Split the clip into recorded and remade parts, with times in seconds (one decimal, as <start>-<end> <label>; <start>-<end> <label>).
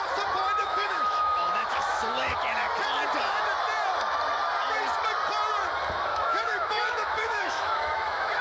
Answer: 0.0-0.6 recorded; 0.6-2.4 remade; 2.4-6.1 recorded; 6.1-8.4 remade